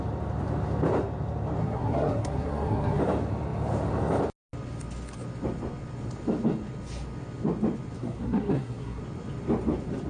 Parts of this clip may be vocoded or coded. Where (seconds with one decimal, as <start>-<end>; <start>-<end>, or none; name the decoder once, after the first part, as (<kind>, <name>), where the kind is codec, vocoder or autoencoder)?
1.6-3.0 (codec, SNAC); 8.0-9.0